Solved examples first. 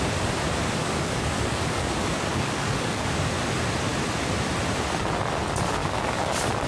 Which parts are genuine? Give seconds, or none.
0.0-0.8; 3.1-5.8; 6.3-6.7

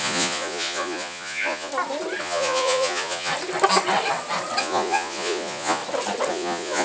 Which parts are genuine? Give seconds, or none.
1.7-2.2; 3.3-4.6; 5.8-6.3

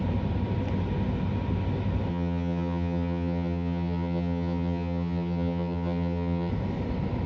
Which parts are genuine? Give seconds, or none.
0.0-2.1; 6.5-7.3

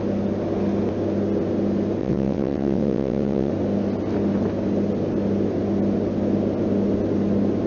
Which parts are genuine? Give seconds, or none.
0.0-2.0; 3.5-7.7